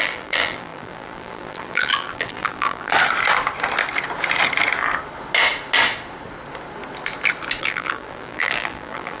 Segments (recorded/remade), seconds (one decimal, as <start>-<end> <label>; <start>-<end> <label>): 0.0-2.9 remade; 2.9-7.6 recorded; 7.6-9.2 remade